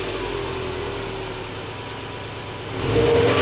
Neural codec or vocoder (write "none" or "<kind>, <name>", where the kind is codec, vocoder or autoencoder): none